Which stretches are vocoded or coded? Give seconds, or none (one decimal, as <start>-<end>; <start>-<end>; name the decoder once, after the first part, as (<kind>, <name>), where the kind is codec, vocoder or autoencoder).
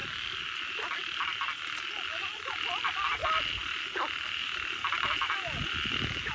none